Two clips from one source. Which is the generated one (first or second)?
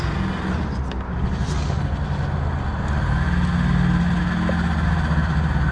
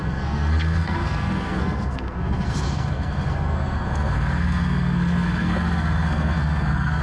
second